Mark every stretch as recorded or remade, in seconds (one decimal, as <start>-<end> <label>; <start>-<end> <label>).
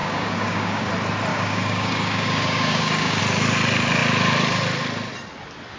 0.0-0.9 remade; 0.9-1.3 recorded; 1.3-3.2 remade; 3.2-5.8 recorded